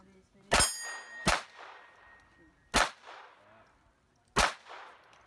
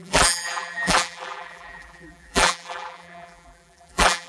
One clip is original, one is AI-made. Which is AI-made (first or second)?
second